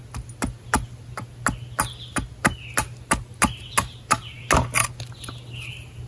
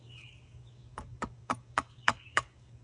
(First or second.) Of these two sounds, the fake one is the second